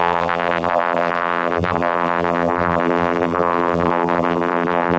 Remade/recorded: remade